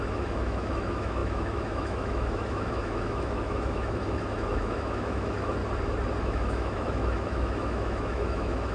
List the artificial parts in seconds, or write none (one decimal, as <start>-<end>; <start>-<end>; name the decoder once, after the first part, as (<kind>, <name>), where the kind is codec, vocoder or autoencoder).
0.0-5.6 (autoencoder, DAC-VAE); 6.2-8.7